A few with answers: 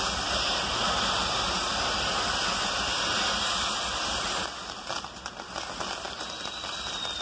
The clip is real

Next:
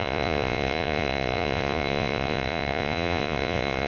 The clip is fake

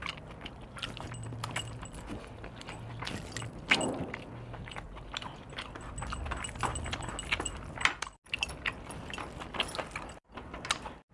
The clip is real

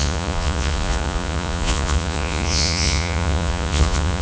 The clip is fake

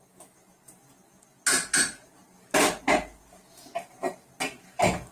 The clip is real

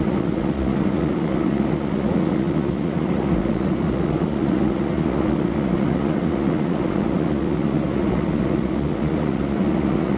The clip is fake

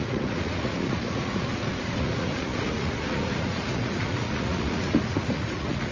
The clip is fake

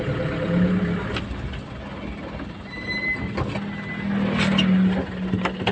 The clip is real